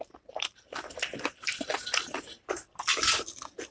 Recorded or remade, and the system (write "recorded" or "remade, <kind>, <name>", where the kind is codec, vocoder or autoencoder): recorded